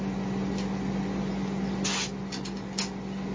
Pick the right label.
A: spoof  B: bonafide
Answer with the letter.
B